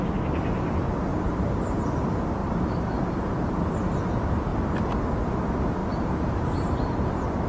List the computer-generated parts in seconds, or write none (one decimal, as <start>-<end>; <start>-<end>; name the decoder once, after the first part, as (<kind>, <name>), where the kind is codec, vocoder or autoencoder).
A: 1.1-1.7 (vocoder, BigVGAN v2); 2.4-3.7; 5.8-6.7